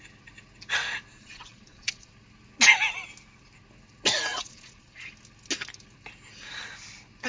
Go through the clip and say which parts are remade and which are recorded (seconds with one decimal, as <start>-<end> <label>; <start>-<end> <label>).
0.0-1.1 recorded; 1.1-2.1 remade; 2.1-4.3 recorded; 4.3-5.0 remade; 5.0-7.3 recorded